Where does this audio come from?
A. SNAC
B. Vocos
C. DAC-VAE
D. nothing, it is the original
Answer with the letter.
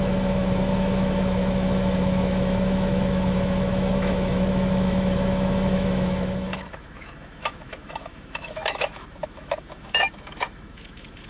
C